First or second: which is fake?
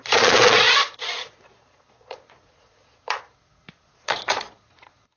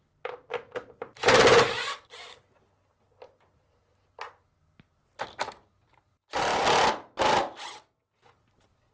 first